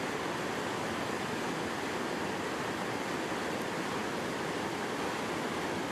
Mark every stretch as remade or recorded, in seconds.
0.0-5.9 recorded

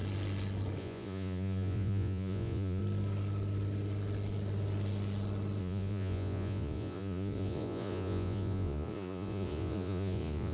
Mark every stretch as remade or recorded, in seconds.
0.0-0.8 recorded; 0.8-2.8 remade; 2.8-5.6 recorded; 5.6-10.5 remade

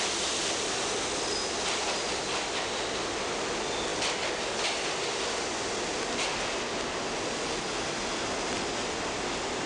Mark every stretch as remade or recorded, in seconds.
0.0-9.7 recorded